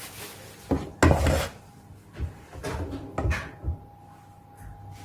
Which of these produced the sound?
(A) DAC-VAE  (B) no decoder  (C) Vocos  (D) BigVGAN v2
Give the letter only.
B